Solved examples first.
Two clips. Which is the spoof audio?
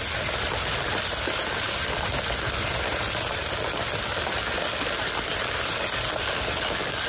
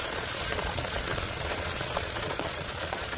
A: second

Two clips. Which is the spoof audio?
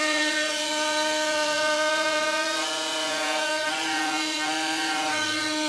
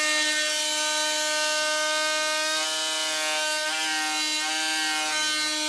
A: first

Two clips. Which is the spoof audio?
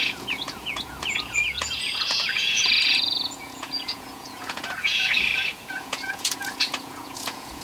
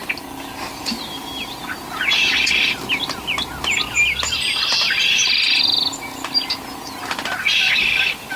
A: first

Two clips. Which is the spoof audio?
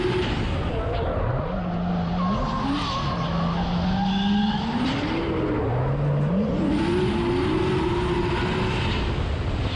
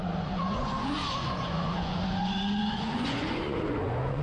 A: second